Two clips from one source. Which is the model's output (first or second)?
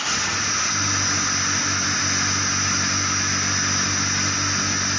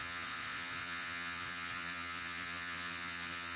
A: second